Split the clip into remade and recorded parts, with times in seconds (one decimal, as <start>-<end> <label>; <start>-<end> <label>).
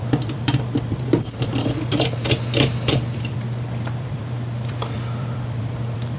0.0-2.2 remade; 2.2-2.9 recorded; 2.9-6.2 remade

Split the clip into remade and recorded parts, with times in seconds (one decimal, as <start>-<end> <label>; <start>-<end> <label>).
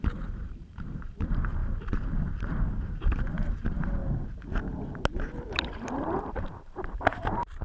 0.0-4.0 remade; 4.0-5.6 recorded; 5.6-7.6 remade